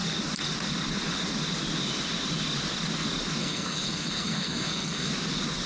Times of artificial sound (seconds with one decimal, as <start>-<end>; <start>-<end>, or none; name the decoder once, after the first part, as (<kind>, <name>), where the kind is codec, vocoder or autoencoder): 3.4-5.1 (codec, SNAC)